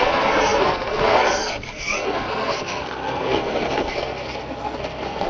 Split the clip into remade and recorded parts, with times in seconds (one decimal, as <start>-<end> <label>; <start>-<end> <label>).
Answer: 0.0-5.3 remade